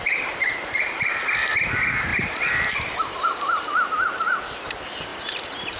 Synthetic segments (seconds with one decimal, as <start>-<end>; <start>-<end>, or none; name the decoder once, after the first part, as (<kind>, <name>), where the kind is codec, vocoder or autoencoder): 0.4-1.2 (vocoder, BigVGAN v2); 2.1-3.9; 5.1-5.8